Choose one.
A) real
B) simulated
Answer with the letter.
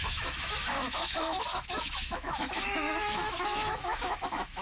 B